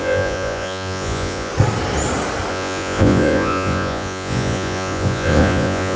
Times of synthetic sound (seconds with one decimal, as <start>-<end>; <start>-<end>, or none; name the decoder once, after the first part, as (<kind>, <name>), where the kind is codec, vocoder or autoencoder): 0.0-1.5 (vocoder, Vocos); 2.5-6.0